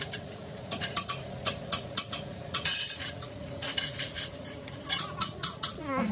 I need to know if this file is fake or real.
fake